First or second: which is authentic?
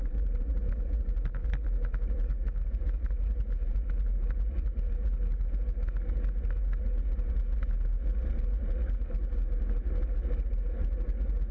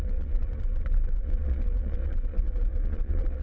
first